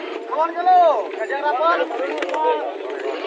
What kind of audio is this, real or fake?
real